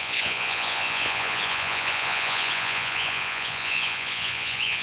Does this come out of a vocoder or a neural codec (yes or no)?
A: yes